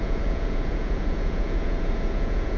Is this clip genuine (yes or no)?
no